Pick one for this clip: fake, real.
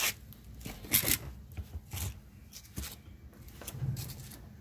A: real